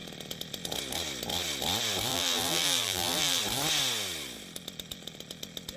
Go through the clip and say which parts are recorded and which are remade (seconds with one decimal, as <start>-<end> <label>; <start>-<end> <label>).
0.0-2.1 recorded; 2.1-3.4 remade; 3.4-5.8 recorded